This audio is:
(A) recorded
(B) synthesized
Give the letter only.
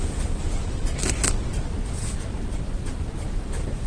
A